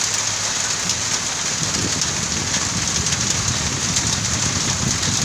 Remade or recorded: recorded